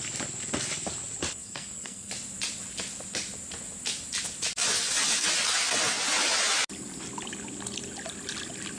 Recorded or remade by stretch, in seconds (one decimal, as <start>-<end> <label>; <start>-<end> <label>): 0.0-1.3 recorded; 1.3-2.1 remade; 2.1-8.8 recorded